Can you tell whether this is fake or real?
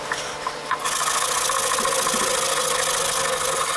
real